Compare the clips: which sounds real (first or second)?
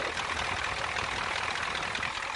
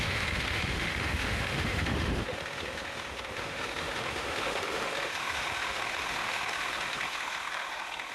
first